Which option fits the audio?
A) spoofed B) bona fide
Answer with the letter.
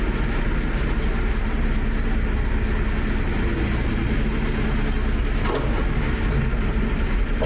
B